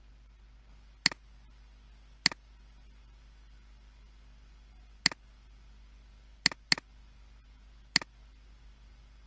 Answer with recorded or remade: recorded